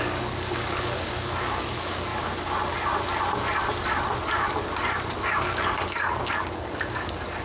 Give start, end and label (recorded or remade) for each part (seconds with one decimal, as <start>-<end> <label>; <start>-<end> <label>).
0.0-2.1 remade; 2.1-5.1 recorded; 5.1-7.4 remade